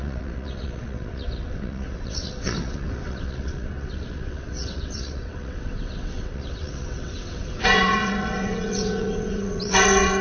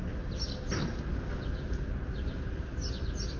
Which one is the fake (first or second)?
first